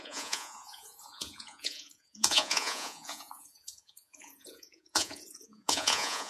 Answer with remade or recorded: remade